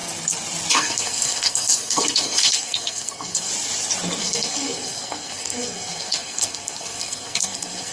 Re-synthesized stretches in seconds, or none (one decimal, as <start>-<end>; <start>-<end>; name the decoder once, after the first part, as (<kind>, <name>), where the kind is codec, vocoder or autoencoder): 0.7-3.5 (codec, SNAC); 4.2-7.9